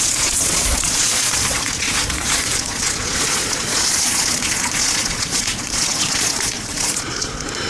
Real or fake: fake